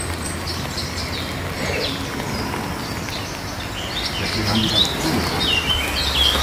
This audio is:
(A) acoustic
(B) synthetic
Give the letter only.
A